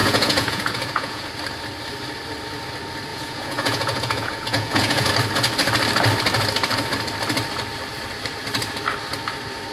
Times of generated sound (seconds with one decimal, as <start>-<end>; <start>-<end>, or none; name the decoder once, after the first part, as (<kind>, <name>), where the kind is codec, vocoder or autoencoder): 0.0-1.3 (vocoder, Vocos); 3.1-5.1